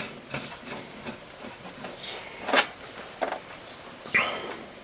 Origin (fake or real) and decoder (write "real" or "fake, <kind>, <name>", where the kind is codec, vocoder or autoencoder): real